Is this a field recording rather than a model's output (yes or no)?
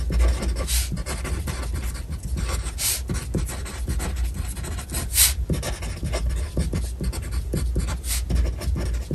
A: yes